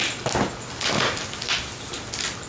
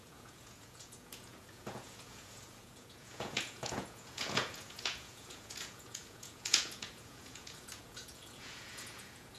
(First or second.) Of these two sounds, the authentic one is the first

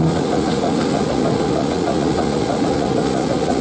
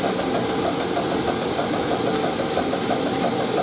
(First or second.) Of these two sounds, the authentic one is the second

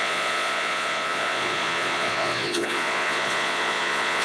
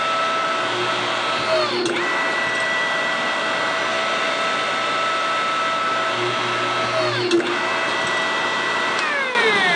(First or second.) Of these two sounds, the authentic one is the second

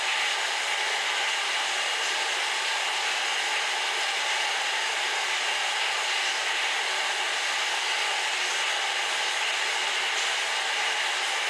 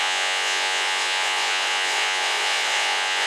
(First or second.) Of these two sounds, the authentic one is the first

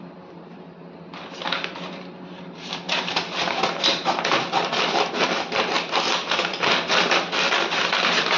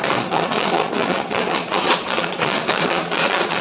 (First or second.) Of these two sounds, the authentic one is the first